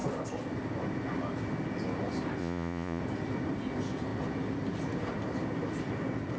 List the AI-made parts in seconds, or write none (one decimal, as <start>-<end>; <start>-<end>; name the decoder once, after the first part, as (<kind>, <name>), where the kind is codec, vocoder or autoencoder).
2.4-3.0 (vocoder, Vocos)

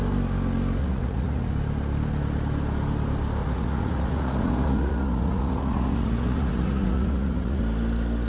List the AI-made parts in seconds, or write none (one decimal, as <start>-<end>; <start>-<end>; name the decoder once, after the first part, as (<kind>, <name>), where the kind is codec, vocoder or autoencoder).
0.8-1.5 (vocoder, Vocos); 3.4-7.6

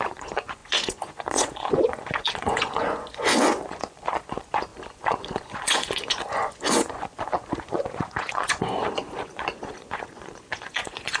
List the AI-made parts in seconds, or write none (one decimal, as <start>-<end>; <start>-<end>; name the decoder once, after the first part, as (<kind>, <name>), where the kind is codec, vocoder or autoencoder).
0.0-11.2 (vocoder, Vocos)

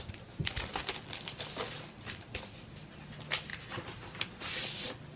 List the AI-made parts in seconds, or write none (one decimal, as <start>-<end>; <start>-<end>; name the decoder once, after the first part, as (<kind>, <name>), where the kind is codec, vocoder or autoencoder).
3.5-4.0 (vocoder, BigVGAN v2)

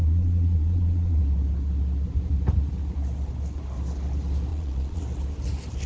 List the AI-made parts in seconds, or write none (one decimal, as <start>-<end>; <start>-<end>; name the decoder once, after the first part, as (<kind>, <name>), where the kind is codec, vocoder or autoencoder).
0.0-1.2 (vocoder, Vocos); 4.5-5.0

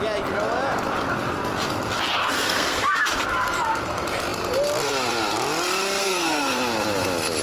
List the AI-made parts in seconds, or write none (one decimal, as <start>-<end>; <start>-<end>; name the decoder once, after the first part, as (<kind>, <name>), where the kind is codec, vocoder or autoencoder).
2.2-2.9 (codec, SNAC); 6.0-6.6

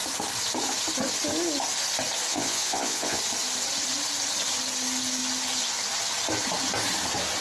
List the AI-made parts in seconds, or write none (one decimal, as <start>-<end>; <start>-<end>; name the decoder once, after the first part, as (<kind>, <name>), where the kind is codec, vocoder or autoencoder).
2.3-3.2 (vocoder, Vocos)

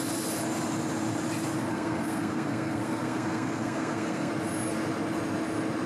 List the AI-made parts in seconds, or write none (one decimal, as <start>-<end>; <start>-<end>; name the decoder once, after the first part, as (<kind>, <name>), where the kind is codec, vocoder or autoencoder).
1.7-4.3 (codec, SNAC)